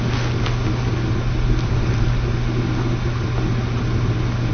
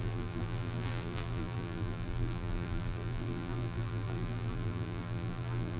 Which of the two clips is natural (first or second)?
first